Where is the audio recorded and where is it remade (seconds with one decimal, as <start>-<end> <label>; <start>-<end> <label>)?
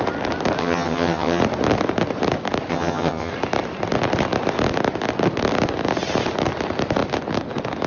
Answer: 0.0-0.6 recorded; 0.6-1.4 remade; 1.4-2.7 recorded; 2.7-3.3 remade; 3.3-7.9 recorded